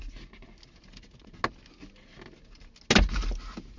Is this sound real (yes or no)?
yes